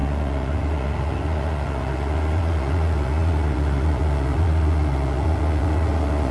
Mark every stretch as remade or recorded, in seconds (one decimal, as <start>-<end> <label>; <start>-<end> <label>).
0.0-6.3 remade